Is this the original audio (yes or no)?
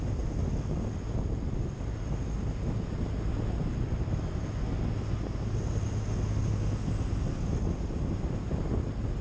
yes